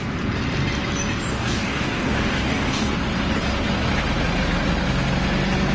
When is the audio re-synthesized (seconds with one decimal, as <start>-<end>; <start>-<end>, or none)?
1.3-2.9